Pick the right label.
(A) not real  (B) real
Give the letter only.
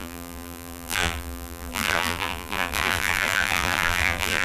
A